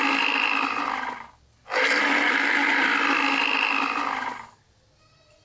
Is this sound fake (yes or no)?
no